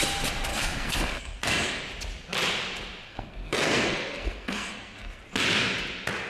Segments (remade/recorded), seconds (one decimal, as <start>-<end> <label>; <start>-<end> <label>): 0.0-0.5 recorded; 0.5-1.8 remade; 1.8-3.1 recorded; 3.1-5.2 remade; 5.2-6.3 recorded